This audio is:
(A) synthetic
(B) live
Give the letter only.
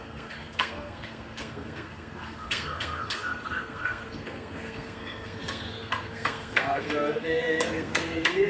A